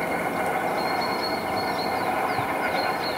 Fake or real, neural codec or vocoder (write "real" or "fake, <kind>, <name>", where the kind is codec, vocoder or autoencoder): real